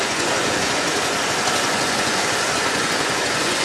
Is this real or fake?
fake